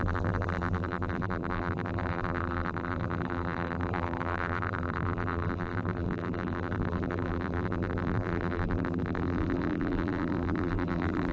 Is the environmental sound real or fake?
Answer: fake